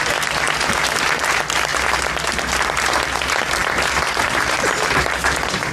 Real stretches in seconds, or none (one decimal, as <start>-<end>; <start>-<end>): 0.0-5.7